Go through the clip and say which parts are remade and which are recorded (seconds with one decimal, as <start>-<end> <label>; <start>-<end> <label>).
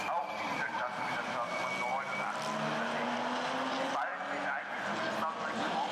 0.0-5.9 recorded